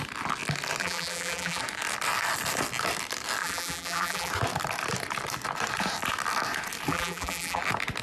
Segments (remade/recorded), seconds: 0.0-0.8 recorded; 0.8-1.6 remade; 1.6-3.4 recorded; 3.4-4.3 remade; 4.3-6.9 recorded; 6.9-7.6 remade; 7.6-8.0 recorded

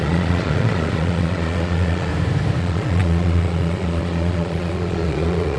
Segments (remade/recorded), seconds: 0.0-2.1 remade; 2.1-2.6 recorded; 2.6-5.6 remade